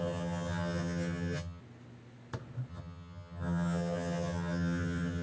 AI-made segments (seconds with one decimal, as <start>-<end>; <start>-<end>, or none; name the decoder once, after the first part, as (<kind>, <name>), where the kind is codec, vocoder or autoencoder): 0.0-1.6 (vocoder, HiFi-GAN); 2.7-5.2